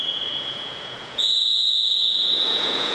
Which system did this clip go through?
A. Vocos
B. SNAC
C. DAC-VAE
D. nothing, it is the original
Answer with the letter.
A